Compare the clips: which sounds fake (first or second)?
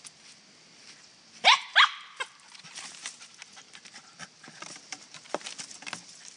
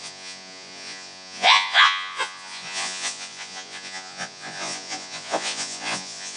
second